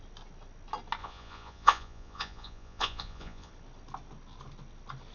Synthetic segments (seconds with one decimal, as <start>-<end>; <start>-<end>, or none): 1.0-3.5